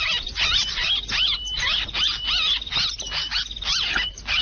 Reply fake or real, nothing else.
real